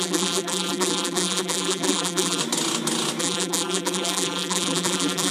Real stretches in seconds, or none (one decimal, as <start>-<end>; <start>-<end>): 2.4-3.2